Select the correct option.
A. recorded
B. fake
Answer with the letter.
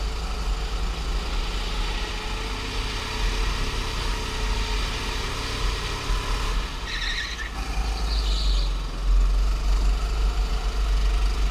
A